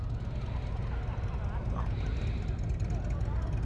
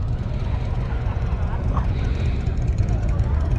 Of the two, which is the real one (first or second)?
first